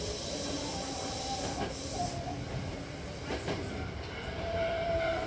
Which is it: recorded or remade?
remade